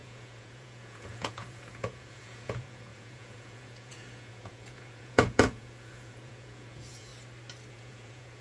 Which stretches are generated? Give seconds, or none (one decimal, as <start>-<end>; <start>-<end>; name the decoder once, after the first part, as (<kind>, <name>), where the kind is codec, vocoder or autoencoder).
0.0-7.1 (vocoder, Vocos); 7.7-8.4